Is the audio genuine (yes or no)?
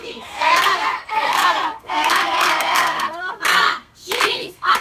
no